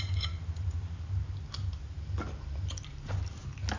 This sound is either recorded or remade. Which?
recorded